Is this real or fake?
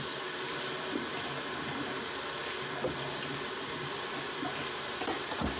real